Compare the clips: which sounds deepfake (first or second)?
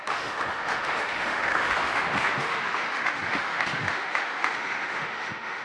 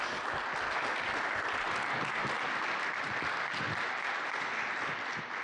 first